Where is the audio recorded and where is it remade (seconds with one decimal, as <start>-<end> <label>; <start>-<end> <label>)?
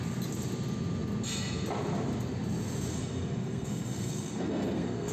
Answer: 0.0-2.9 recorded; 2.9-5.1 remade